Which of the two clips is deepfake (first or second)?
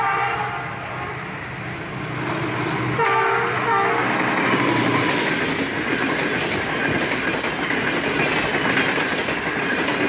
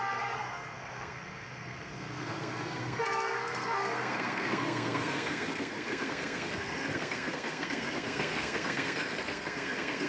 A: second